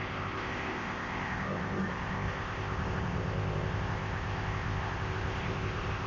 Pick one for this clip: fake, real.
fake